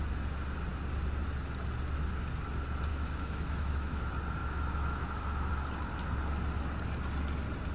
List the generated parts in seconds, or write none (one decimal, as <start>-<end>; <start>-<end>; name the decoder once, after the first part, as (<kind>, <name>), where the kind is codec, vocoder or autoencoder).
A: 2.9-4.0 (autoencoder, DAC-VAE); 4.4-5.5